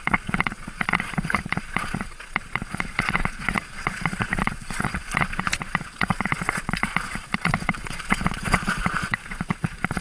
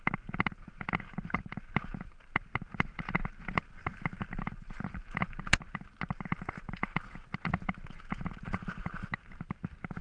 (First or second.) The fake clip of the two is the first